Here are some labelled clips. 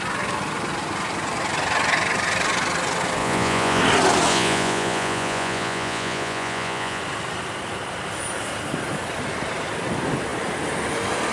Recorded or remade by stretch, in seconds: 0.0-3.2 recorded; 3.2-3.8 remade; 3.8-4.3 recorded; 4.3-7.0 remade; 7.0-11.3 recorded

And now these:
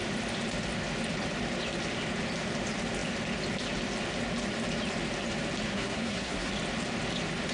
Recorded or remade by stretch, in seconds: 0.0-5.7 recorded; 5.7-6.5 remade; 6.5-7.5 recorded

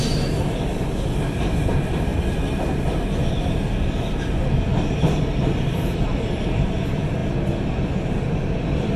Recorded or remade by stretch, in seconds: 0.0-9.0 recorded

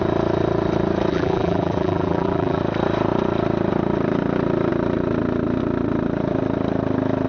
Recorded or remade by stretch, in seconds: 0.0-1.1 recorded; 1.1-2.6 remade; 2.6-7.3 recorded